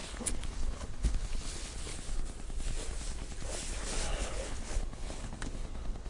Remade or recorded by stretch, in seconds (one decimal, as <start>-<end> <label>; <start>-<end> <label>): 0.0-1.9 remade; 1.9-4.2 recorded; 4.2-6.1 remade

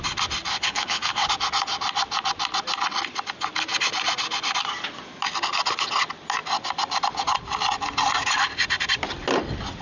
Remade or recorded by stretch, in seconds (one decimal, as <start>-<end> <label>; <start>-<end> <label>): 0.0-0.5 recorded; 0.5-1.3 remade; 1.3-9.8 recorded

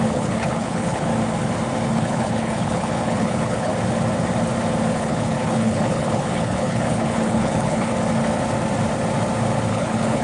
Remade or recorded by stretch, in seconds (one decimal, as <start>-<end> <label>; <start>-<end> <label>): 0.0-1.1 remade; 1.1-1.9 recorded; 1.9-3.7 remade; 3.7-5.0 recorded; 5.0-7.9 remade; 7.9-9.7 recorded; 9.7-10.2 remade

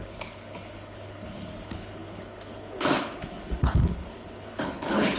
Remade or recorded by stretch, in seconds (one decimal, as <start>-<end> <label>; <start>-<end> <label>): 0.0-5.2 remade

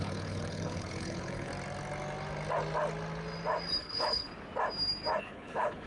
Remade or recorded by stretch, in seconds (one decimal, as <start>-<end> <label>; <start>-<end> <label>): 0.0-1.5 remade; 1.5-3.8 recorded; 3.8-4.3 remade; 4.3-5.2 recorded; 5.2-5.9 remade

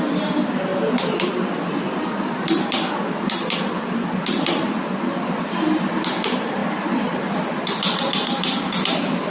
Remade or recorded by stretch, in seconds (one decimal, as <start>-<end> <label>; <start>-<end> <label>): 0.0-9.3 recorded